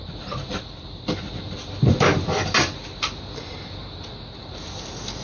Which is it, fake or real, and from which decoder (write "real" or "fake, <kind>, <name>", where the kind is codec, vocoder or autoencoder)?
real